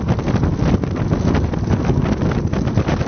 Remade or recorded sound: recorded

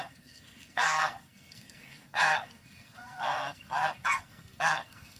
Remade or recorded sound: remade